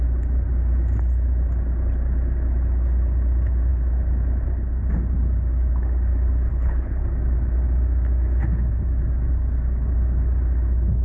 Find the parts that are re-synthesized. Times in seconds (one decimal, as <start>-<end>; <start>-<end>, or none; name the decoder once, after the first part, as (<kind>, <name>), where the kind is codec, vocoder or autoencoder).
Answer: 6.5-7.0 (codec, HILCodec)